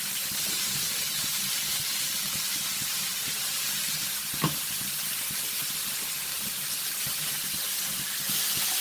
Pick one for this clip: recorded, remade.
remade